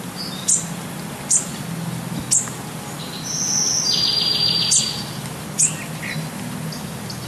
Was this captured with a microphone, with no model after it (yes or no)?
yes